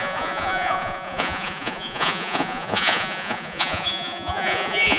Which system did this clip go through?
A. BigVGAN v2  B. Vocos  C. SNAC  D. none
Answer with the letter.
B